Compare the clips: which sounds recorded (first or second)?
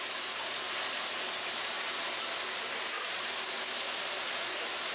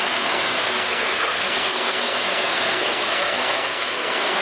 first